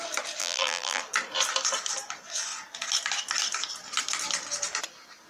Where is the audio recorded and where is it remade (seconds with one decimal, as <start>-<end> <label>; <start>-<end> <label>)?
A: 0.0-0.4 recorded; 0.4-1.0 remade; 1.0-5.3 recorded